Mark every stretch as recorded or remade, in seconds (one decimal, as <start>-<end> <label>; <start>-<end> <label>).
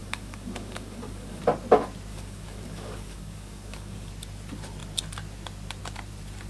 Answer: 0.0-1.4 remade; 1.4-2.1 recorded; 2.1-4.1 remade; 4.1-6.5 recorded